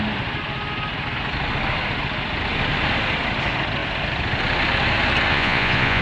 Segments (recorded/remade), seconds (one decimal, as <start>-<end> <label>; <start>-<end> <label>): 0.0-5.3 recorded; 5.3-6.0 remade